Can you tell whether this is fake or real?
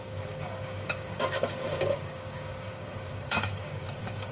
fake